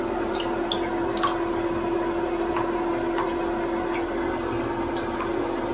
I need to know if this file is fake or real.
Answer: real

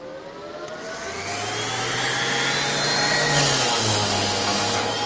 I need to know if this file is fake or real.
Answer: real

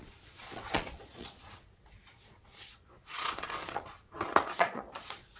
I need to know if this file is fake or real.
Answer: fake